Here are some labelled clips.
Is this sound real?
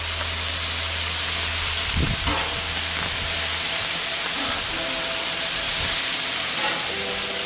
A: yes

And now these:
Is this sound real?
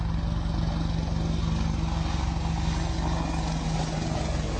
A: yes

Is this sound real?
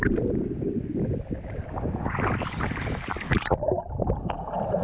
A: yes